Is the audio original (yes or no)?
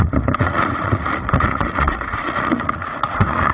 no